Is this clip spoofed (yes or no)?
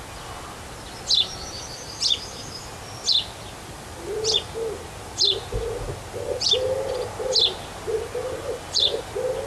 no